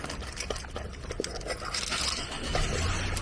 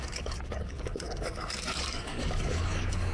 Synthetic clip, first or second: second